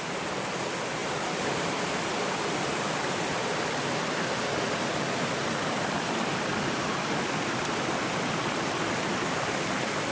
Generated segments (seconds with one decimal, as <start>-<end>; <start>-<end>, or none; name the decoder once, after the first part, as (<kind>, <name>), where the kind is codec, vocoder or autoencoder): none